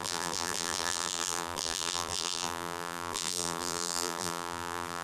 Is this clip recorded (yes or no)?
no